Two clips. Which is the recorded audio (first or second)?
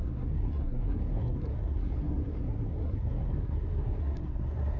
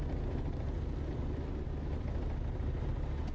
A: second